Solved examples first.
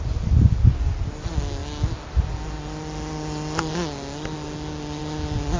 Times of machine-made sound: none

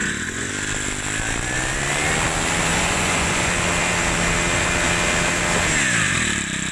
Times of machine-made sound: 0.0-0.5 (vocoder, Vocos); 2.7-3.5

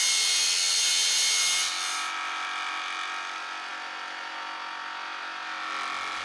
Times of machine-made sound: none

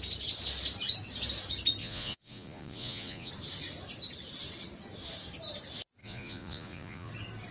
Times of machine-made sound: 1.8-3.3 (vocoder, Vocos); 6.0-7.1

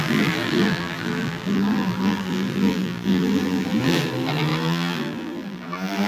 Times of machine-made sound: 0.0-6.1 (vocoder, BigVGAN v2)